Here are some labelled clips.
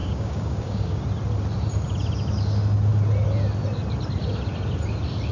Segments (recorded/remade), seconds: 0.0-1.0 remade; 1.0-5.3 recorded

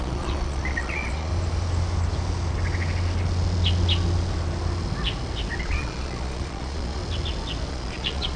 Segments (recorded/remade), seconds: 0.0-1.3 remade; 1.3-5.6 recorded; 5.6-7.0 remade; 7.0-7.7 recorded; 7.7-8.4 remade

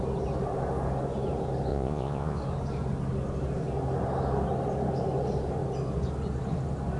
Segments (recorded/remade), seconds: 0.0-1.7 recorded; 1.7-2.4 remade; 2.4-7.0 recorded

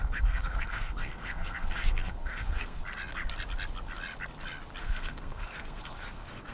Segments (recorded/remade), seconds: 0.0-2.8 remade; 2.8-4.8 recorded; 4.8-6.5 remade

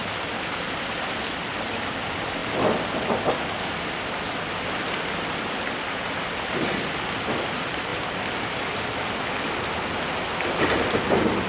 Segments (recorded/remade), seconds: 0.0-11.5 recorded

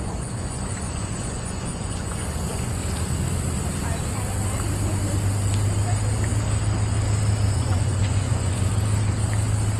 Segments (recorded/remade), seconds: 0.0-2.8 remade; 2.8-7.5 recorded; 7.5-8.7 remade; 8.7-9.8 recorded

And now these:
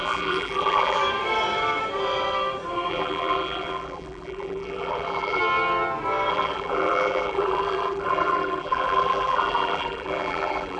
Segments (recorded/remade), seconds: 0.0-1.0 remade; 1.0-2.9 recorded; 2.9-5.4 remade; 5.4-6.3 recorded; 6.3-10.8 remade